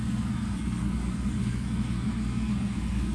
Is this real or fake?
fake